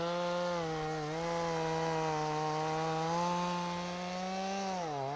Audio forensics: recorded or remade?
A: recorded